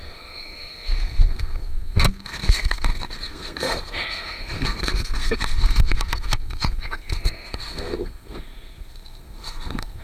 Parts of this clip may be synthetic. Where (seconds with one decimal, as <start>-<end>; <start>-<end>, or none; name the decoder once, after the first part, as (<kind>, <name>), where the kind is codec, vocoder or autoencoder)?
0.0-10.0 (codec, SNAC)